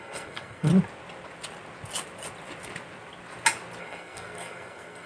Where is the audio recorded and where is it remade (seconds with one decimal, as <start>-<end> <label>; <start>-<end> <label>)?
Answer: 0.0-0.7 remade; 0.7-3.8 recorded; 3.8-5.1 remade